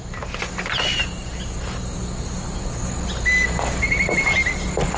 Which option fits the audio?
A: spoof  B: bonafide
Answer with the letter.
B